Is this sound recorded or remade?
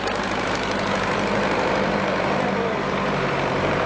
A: remade